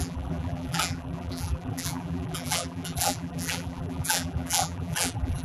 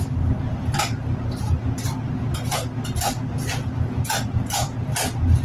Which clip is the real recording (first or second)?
second